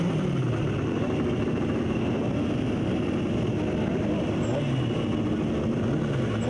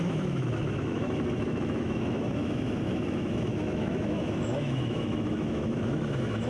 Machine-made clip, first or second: second